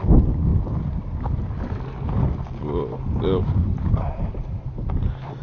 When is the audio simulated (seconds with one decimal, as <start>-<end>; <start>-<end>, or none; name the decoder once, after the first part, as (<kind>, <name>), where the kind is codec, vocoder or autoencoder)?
3.4-5.4 (vocoder, BigVGAN v2)